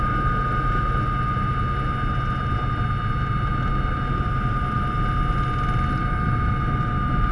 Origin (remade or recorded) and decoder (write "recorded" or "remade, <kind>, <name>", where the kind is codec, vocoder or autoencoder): recorded